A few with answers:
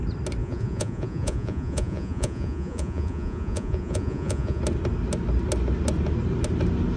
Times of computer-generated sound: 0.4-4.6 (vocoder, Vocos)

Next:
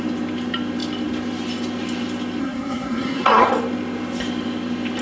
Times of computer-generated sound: 2.4-3.5 (codec, SNAC)

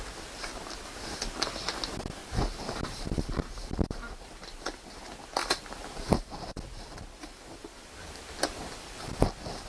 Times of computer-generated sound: 2.2-4.2 (vocoder, BigVGAN v2); 5.4-6.6